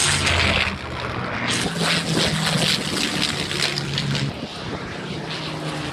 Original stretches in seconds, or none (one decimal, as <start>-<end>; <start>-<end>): 0.0-4.5; 5.2-5.9